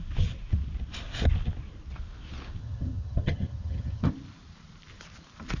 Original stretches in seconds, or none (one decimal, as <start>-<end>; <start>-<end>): 0.0-2.6; 4.1-5.6